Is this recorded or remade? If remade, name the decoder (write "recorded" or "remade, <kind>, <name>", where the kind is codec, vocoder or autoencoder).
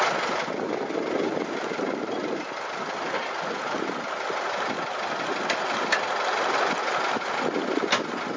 recorded